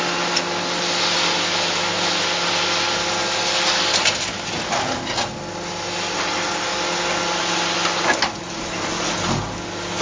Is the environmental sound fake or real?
real